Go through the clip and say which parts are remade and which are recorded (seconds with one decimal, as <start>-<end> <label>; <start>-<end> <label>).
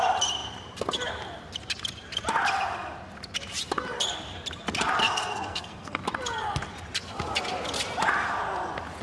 0.0-5.0 recorded; 5.0-6.0 remade; 6.0-9.0 recorded